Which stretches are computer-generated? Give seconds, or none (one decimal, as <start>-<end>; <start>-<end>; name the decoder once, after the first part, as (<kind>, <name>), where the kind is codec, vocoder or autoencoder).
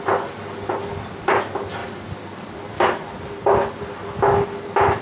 none